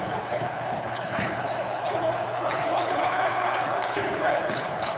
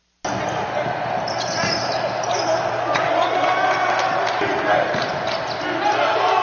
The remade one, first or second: first